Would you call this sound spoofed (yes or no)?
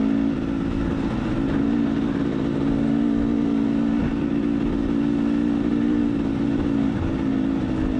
no